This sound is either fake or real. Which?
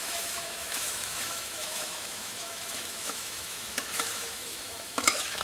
fake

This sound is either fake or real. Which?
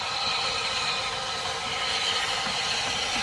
real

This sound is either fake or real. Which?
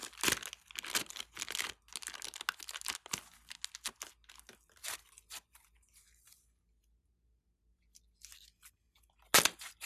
real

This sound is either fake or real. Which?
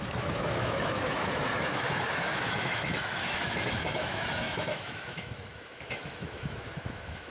fake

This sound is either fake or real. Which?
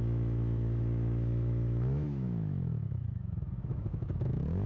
fake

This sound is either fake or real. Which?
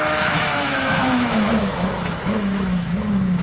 fake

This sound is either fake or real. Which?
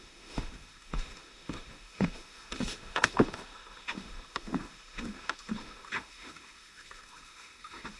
fake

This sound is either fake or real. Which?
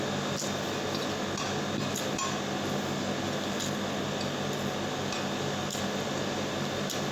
real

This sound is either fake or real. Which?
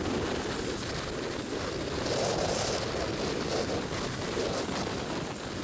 real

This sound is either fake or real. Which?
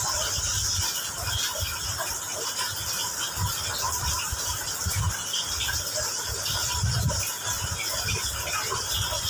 real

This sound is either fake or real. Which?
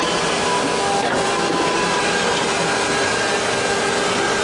real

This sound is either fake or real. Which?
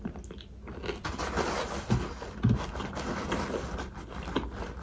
real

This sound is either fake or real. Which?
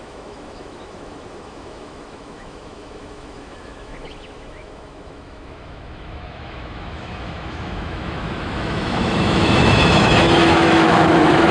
fake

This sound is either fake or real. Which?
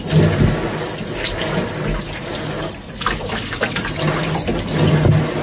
real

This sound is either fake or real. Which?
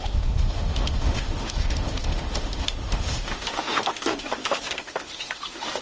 fake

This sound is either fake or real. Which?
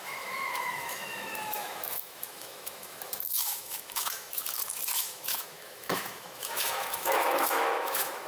fake